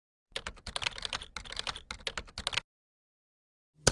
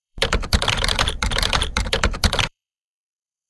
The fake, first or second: second